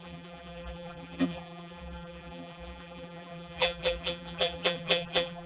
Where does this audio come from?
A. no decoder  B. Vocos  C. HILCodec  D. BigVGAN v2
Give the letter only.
D